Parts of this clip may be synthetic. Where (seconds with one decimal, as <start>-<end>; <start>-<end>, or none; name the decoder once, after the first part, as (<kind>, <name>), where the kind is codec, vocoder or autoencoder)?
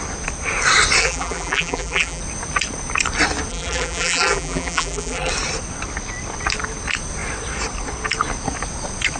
1.0-2.2 (vocoder, BigVGAN v2); 3.5-5.3